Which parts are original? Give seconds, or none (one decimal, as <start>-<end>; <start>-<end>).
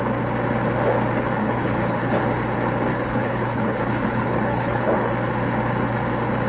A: 0.0-1.4; 2.2-2.9; 5.1-6.5